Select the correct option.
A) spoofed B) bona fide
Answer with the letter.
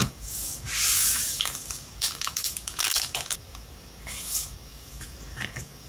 A